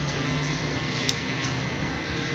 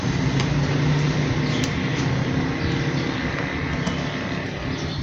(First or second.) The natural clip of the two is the second